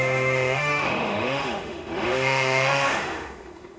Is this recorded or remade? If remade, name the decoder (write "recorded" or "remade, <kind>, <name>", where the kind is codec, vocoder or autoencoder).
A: remade, autoencoder, DAC-VAE